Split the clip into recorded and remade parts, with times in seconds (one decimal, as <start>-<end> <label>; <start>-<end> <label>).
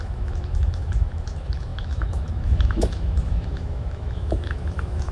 0.0-5.1 remade